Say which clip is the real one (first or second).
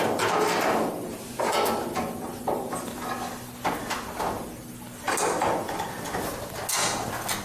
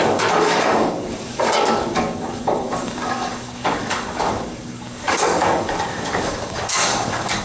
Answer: first